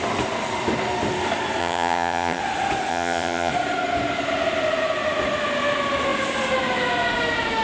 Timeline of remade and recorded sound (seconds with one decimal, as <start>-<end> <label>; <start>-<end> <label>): 0.0-1.6 recorded; 1.6-2.4 remade; 2.4-2.9 recorded; 2.9-3.5 remade; 3.5-7.6 recorded